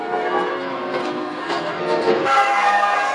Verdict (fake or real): fake